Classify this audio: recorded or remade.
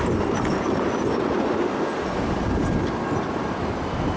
recorded